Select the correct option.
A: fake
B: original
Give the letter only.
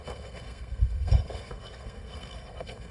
A